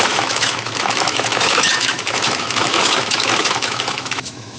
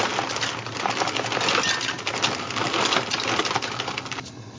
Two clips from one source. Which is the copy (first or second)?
first